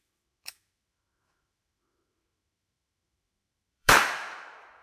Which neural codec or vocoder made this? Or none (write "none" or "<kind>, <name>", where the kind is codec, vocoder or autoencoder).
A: autoencoder, DAC-VAE